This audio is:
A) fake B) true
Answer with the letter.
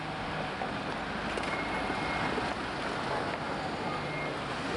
B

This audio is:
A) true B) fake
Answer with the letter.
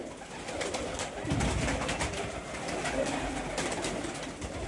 A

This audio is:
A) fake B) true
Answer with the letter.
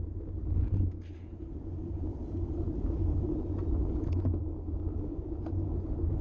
A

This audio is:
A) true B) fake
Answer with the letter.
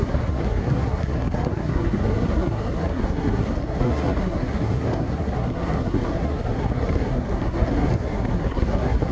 B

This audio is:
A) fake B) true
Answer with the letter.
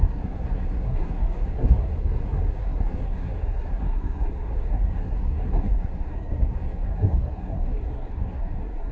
A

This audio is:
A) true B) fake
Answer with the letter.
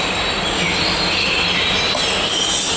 A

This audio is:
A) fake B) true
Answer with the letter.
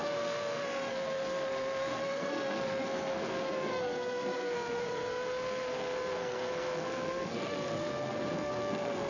A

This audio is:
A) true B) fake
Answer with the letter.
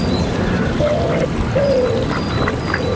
A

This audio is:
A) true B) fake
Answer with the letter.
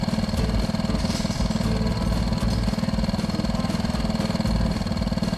A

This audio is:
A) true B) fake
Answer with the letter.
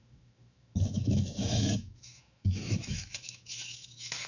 B